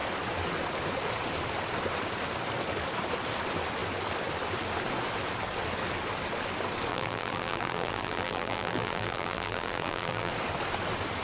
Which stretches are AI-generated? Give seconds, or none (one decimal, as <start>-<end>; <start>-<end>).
6.9-10.3